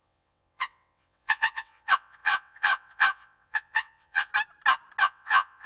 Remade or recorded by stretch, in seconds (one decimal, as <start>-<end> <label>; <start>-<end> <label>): 0.0-4.3 remade; 4.3-5.0 recorded; 5.0-5.7 remade